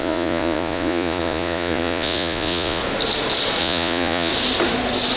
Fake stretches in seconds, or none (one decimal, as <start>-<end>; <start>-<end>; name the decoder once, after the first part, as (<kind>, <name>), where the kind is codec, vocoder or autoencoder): 0.0-2.8 (vocoder, Vocos); 3.6-4.3